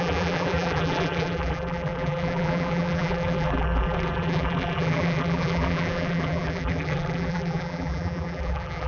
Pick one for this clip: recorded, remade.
remade